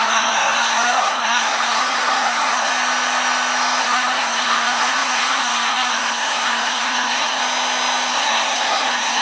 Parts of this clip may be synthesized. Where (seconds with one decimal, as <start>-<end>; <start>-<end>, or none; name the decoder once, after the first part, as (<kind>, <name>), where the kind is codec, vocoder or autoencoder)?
0.0-2.7 (codec, SNAC); 3.8-7.4; 8.1-9.2